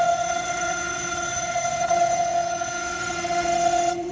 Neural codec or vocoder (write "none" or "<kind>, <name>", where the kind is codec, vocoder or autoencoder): vocoder, WaveNeXt